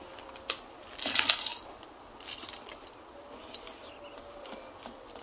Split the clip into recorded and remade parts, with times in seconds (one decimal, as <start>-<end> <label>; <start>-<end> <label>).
0.0-5.2 recorded